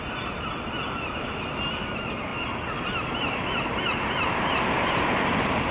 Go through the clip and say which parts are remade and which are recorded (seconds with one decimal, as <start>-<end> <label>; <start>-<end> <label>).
0.0-5.7 recorded